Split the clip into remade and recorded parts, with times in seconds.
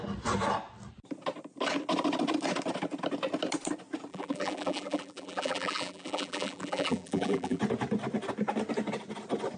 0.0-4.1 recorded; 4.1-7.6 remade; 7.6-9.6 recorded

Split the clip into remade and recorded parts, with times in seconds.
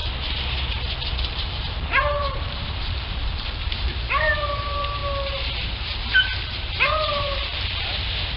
0.0-0.7 recorded; 0.7-5.0 remade; 5.0-6.1 recorded; 6.1-8.4 remade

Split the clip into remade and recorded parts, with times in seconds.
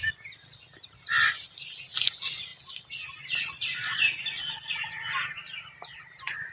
0.0-5.4 recorded; 5.4-6.1 remade; 6.1-6.5 recorded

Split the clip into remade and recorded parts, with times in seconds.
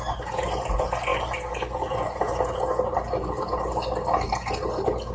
0.0-1.1 recorded; 1.1-2.2 remade; 2.2-5.1 recorded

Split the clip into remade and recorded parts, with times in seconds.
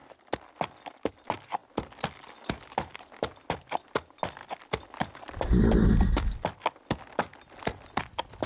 0.0-8.5 recorded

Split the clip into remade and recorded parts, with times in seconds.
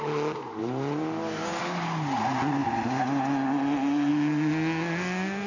0.0-0.6 recorded; 0.6-1.6 remade; 1.6-5.5 recorded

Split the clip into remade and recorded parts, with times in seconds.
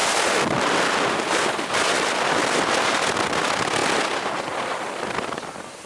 0.0-3.4 recorded; 3.4-3.8 remade; 3.8-4.4 recorded; 4.4-5.9 remade